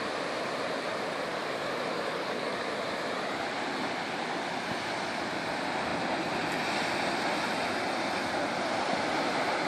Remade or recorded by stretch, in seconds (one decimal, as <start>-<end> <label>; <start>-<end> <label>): 0.0-1.3 recorded; 1.3-2.7 remade; 2.7-9.7 recorded